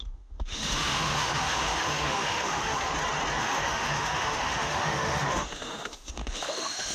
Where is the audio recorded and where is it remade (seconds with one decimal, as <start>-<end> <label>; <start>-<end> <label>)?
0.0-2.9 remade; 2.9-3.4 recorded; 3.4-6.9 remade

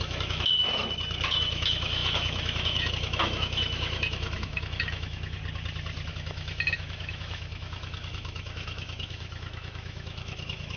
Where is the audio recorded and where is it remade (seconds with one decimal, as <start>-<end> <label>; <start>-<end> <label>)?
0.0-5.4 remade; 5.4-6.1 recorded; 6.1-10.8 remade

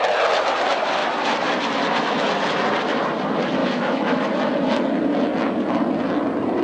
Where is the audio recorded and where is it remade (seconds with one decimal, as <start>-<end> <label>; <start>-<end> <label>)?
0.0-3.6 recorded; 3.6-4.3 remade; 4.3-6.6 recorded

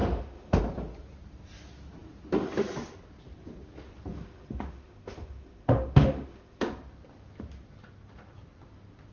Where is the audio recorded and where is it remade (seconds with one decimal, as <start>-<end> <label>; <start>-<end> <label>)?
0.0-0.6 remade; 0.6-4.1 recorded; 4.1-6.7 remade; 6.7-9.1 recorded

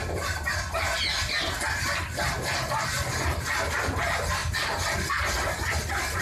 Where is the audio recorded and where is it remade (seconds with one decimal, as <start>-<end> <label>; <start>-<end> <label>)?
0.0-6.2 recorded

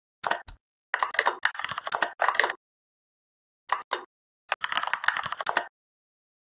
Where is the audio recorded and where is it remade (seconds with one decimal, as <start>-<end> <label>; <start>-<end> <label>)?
0.0-6.6 recorded